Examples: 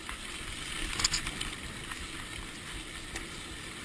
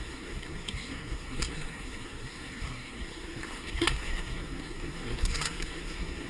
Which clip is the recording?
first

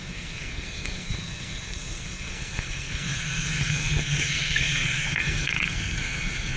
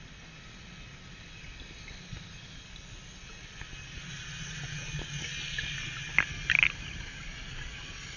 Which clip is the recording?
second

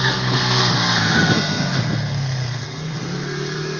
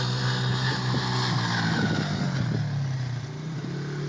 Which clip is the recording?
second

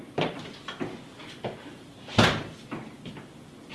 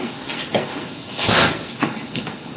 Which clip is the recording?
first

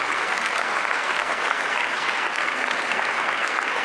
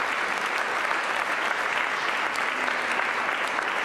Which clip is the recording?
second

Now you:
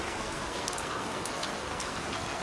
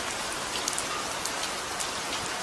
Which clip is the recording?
second